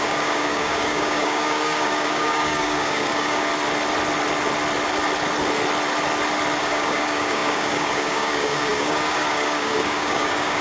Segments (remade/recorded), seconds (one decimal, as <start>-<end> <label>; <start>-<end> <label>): 0.0-3.5 remade; 3.5-6.6 recorded; 6.6-10.6 remade